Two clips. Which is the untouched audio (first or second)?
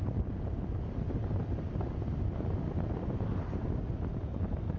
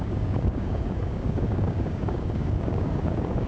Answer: first